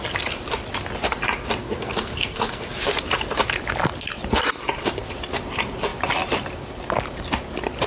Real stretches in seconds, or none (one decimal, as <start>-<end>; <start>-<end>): 0.0-1.6; 2.6-7.9